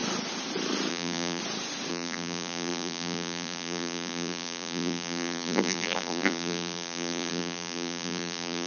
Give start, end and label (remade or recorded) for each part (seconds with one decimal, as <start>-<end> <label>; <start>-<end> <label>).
0.0-0.9 recorded; 0.9-1.4 remade; 1.4-1.9 recorded; 1.9-8.7 remade